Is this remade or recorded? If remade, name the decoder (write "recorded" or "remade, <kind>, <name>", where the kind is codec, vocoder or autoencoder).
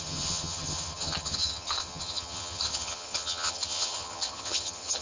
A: remade, vocoder, HiFi-GAN